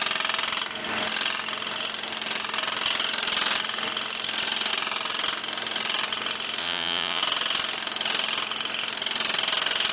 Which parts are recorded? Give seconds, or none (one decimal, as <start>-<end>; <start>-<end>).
0.0-6.6; 7.2-9.9